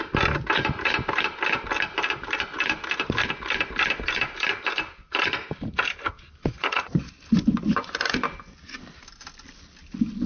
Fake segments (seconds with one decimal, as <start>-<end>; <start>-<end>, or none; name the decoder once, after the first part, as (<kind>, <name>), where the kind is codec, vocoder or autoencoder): 6.4-7.1 (vocoder, Vocos)